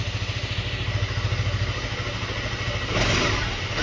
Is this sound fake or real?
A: real